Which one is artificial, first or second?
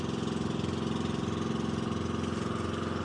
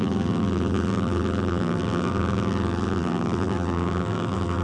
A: second